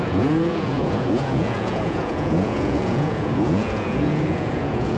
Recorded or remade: remade